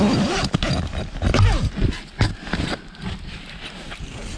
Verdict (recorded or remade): recorded